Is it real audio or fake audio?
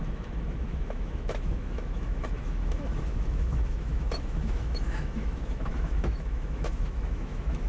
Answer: fake